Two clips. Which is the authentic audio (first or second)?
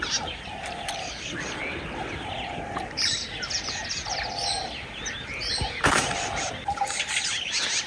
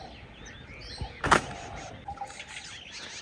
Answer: second